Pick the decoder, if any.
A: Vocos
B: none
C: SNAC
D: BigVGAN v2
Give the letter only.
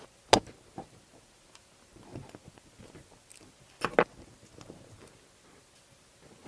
B